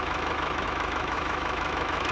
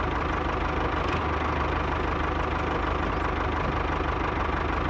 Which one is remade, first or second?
first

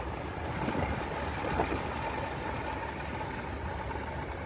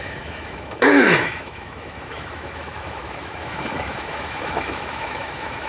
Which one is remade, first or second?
second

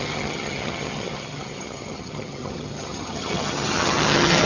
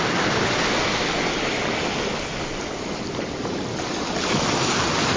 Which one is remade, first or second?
first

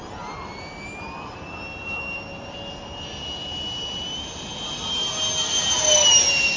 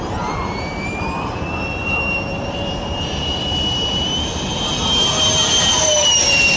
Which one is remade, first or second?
second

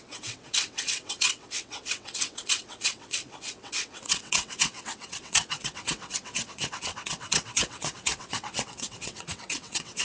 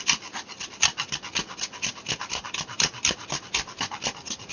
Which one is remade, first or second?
first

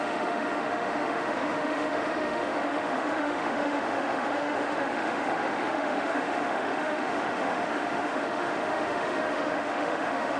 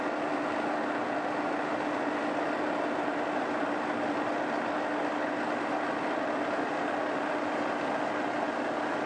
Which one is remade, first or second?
first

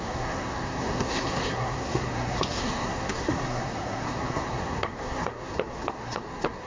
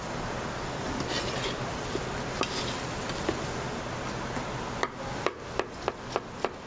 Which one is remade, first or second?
first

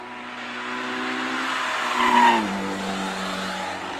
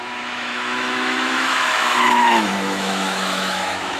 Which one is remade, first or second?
second